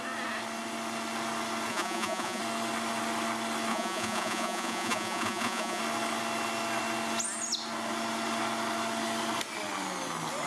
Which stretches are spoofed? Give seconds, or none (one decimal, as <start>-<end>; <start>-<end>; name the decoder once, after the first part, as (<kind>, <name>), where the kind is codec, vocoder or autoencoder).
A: 1.7-2.4 (vocoder, Vocos); 3.7-5.8